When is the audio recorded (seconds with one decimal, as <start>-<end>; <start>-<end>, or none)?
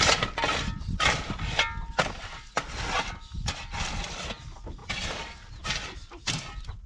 0.0-6.9